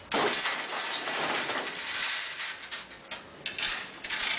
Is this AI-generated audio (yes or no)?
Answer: no